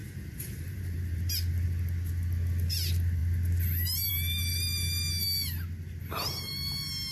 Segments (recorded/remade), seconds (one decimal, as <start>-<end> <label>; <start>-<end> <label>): 0.0-1.2 remade; 1.2-7.1 recorded